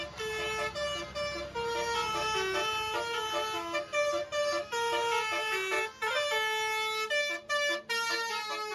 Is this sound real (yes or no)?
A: yes